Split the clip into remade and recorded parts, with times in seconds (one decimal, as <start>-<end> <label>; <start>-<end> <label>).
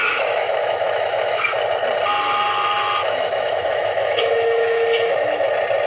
0.0-1.4 remade; 1.4-3.0 recorded; 3.0-5.5 remade; 5.5-5.9 recorded